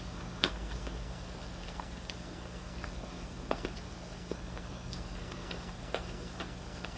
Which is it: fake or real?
fake